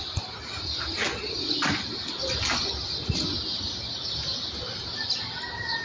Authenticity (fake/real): real